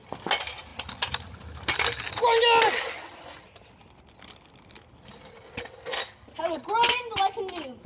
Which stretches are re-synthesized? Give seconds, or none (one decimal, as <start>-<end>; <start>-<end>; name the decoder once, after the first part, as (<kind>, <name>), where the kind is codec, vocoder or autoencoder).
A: none